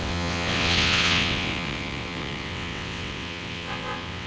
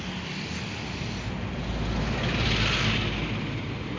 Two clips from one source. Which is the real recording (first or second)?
second